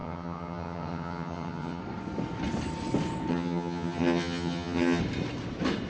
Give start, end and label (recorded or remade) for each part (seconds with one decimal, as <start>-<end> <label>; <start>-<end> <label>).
0.0-1.8 remade; 1.8-3.3 recorded; 3.3-5.0 remade; 5.0-5.9 recorded